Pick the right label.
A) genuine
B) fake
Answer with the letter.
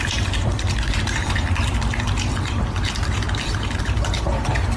B